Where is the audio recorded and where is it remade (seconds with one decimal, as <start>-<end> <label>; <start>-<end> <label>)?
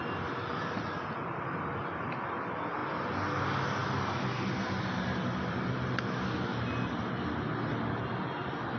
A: 0.0-8.8 recorded